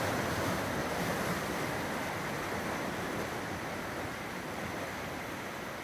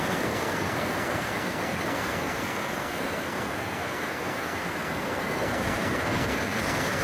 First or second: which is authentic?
first